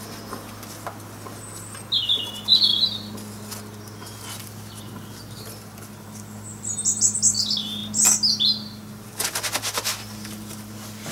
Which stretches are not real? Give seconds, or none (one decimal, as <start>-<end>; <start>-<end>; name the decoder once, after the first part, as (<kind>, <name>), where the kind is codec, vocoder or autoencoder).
none